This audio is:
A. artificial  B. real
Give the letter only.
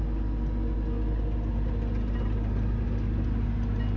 B